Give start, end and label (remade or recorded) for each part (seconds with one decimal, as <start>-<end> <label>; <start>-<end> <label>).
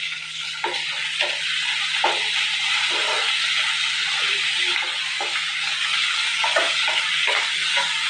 0.0-0.4 remade; 0.4-2.9 recorded; 2.9-3.4 remade; 3.4-4.4 recorded; 4.4-8.1 remade